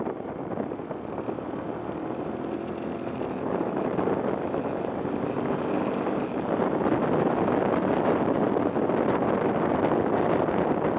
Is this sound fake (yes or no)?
no